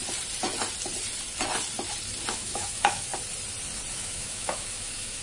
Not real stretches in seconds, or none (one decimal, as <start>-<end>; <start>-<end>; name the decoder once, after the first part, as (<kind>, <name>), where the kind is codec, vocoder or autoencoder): 2.3-3.1 (autoencoder, DAC-VAE); 3.9-5.2